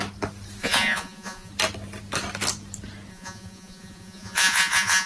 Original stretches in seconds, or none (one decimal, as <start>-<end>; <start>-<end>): 0.0-0.6; 1.5-3.1